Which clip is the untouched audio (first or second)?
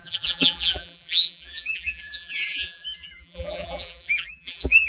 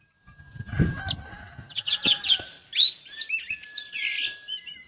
second